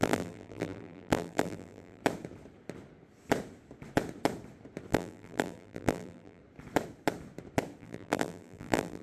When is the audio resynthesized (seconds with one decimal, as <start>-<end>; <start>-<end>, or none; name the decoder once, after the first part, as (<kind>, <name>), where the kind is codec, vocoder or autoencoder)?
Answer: 0.0-2.0 (vocoder, BigVGAN v2); 4.9-6.4; 7.8-9.0